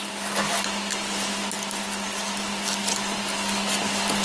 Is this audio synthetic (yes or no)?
no